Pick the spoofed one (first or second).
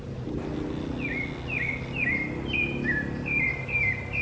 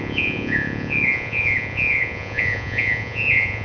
second